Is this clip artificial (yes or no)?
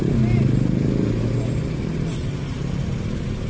no